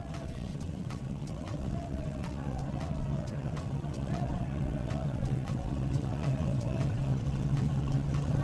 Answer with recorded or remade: remade